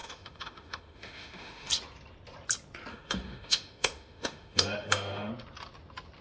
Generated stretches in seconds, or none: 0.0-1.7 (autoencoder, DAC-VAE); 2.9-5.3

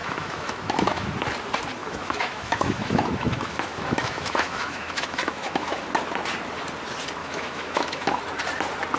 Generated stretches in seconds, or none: 0.0-1.1 (autoencoder, DAC-VAE); 1.8-5.8; 7.2-8.2

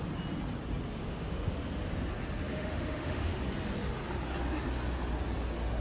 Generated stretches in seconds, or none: 1.0-1.5 (autoencoder, DAC-VAE); 2.5-3.4